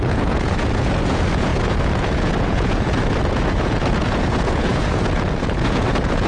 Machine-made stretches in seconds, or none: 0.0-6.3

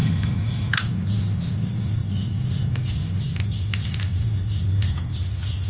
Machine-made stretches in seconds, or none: 0.0-0.7

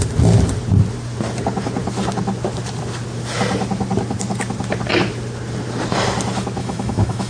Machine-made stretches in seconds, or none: 6.6-7.3

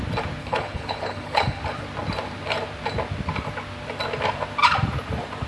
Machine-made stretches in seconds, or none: 0.4-1.6